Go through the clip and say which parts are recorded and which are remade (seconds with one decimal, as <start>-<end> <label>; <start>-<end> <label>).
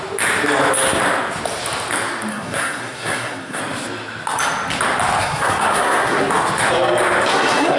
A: 0.0-2.3 recorded; 2.3-3.6 remade; 3.6-5.2 recorded; 5.2-6.3 remade; 6.3-7.3 recorded; 7.3-7.8 remade